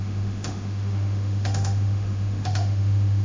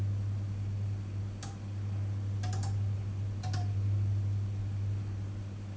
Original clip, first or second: second